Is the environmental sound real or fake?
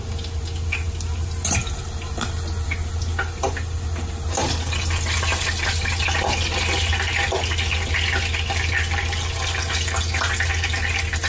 real